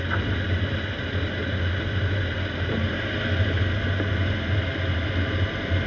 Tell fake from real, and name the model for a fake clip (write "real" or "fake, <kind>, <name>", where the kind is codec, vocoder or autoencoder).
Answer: real